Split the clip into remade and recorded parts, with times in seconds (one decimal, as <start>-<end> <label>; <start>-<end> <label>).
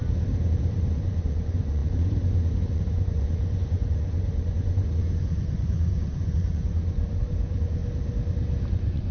0.0-0.8 recorded; 0.8-7.8 remade; 7.8-8.7 recorded; 8.7-9.1 remade